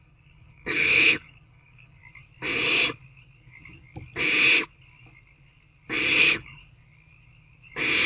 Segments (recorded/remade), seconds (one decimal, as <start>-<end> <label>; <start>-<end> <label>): 0.0-2.0 remade; 2.0-6.1 recorded; 6.1-6.6 remade; 6.6-8.1 recorded